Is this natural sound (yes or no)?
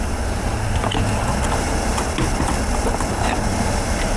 yes